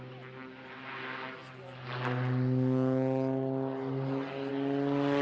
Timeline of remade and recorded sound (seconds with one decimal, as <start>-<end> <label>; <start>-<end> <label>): 0.0-5.2 recorded